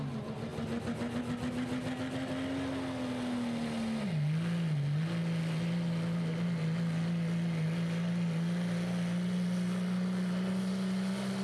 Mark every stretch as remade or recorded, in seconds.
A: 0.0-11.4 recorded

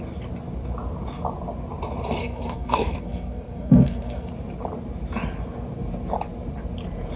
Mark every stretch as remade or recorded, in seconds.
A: 0.0-2.2 recorded; 2.2-4.3 remade; 4.3-7.2 recorded

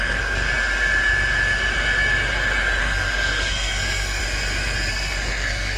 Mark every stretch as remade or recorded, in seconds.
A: 0.0-0.5 remade; 0.5-2.8 recorded; 2.8-4.2 remade; 4.2-4.9 recorded; 4.9-5.8 remade

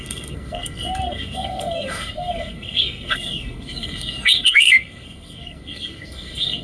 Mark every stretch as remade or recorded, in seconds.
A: 0.0-6.6 remade

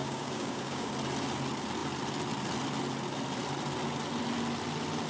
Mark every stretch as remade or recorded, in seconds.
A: 0.0-0.9 remade; 0.9-5.1 recorded

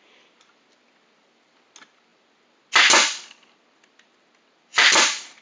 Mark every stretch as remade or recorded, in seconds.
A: 0.0-4.7 recorded; 4.7-5.4 remade

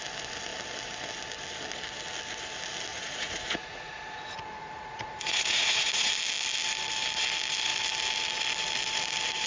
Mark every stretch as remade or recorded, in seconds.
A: 0.0-2.9 recorded; 2.9-6.1 remade; 6.1-9.5 recorded